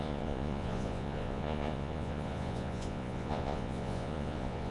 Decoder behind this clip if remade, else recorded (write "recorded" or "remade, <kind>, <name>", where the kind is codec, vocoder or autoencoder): remade, vocoder, Vocos